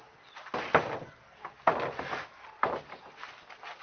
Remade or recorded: recorded